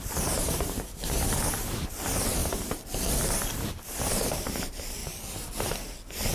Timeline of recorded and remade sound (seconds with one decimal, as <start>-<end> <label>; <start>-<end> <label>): 0.0-2.4 remade; 2.4-3.7 recorded; 3.7-5.0 remade; 5.0-6.3 recorded